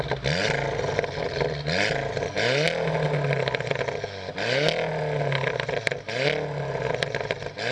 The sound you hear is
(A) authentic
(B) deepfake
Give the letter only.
A